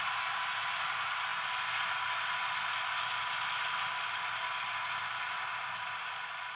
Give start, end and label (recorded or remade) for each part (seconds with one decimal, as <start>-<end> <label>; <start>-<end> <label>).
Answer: 0.0-6.6 recorded